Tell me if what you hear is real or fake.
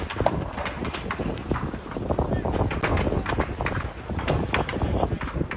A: real